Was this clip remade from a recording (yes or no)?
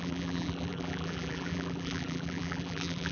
yes